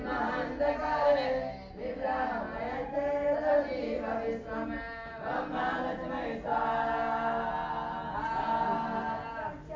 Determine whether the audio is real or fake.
real